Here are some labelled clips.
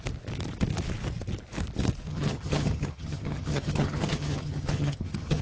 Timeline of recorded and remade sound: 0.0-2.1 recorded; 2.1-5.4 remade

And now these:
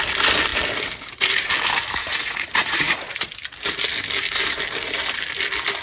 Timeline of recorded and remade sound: 0.0-2.0 recorded; 2.0-3.3 remade; 3.3-5.8 recorded

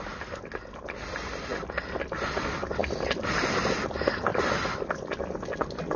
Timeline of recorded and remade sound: 0.0-6.0 recorded

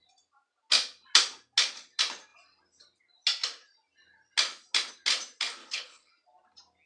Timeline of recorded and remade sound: 0.0-5.6 recorded; 5.6-6.1 remade; 6.1-6.9 recorded

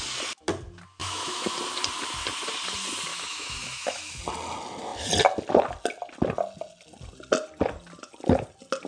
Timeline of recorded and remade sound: 0.0-1.0 recorded; 1.0-1.6 remade; 1.6-3.1 recorded; 3.1-4.2 remade; 4.2-8.9 recorded

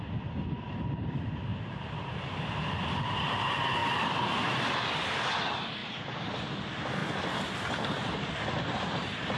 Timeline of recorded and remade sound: 0.0-1.5 recorded; 1.5-3.2 remade; 3.2-3.8 recorded; 3.8-4.7 remade; 4.7-9.4 recorded

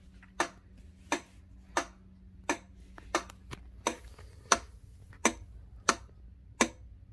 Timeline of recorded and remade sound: 0.0-7.1 recorded

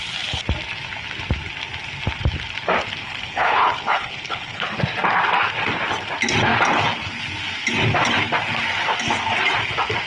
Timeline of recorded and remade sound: 0.0-3.0 recorded; 3.0-4.8 remade; 4.8-10.1 recorded